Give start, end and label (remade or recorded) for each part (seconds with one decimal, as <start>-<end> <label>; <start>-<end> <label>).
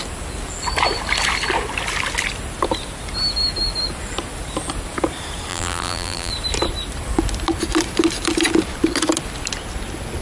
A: 0.0-5.5 recorded; 5.5-6.3 remade; 6.3-10.2 recorded